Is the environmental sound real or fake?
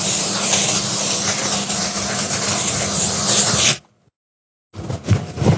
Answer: real